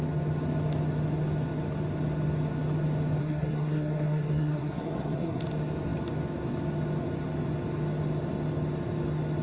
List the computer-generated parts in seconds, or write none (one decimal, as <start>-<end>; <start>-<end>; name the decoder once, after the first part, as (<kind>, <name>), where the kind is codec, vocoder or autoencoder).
3.2-5.4 (codec, SNAC)